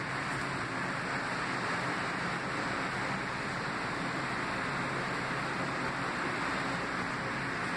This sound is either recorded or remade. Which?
recorded